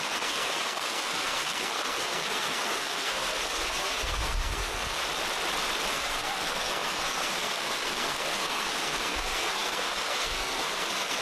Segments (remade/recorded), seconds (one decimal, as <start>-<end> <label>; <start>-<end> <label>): 0.0-5.0 remade; 5.0-5.9 recorded; 5.9-11.2 remade